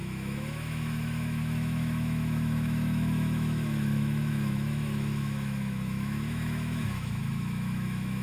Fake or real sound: fake